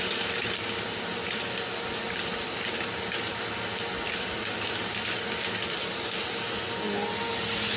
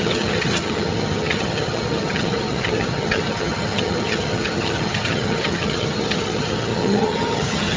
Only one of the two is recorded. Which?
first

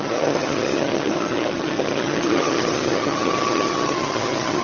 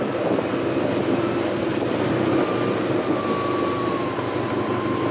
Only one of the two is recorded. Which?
second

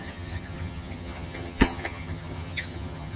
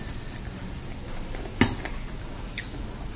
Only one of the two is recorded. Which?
second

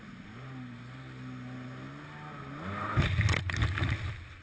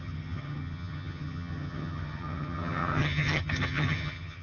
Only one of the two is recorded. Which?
first